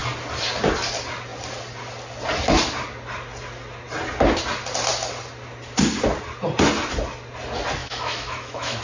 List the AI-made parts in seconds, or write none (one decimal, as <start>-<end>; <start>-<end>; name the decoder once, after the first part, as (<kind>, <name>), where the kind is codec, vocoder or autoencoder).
7.8-8.8 (autoencoder, DAC-VAE)